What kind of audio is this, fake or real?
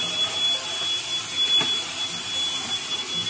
real